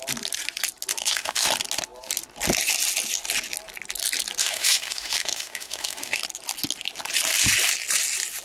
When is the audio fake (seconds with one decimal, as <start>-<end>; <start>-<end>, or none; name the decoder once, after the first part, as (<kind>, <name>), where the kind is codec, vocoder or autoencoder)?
0.9-1.5 (autoencoder, DAC-VAE); 4.4-6.2